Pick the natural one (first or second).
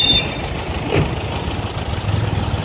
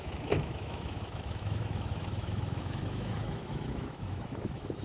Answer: first